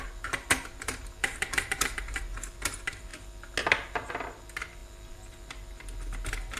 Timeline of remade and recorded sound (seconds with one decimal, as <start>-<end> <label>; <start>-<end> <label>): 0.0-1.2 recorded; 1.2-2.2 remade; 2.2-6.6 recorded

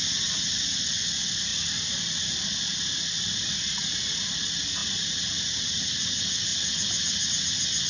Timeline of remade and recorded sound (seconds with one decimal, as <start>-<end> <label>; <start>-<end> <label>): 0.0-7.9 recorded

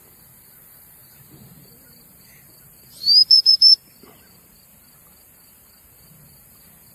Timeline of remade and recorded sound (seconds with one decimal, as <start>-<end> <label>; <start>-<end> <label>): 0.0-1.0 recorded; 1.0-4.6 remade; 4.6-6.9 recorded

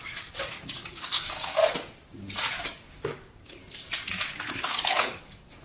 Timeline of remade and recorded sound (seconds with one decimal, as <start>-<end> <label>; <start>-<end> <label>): 0.0-1.6 remade; 1.6-2.5 recorded; 2.5-3.6 remade; 3.6-4.1 recorded; 4.1-5.6 remade